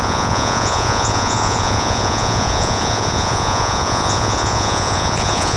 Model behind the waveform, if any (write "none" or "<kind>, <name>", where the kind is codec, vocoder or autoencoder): vocoder, Vocos